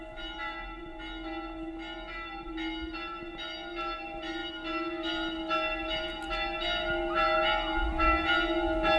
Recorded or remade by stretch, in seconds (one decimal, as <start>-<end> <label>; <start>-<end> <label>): 0.0-9.0 recorded